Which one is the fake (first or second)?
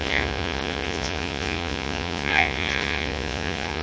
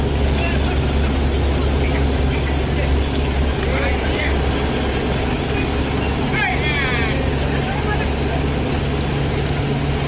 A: first